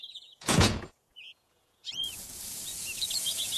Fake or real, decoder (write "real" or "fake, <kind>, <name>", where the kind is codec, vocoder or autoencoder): fake, vocoder, Vocos